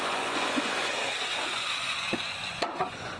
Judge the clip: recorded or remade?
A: remade